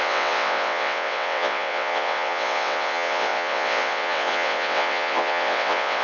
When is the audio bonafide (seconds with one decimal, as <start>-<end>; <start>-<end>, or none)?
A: none